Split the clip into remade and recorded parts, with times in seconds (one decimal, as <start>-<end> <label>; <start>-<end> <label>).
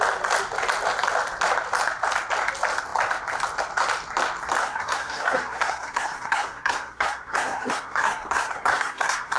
0.0-4.6 recorded; 4.6-9.4 remade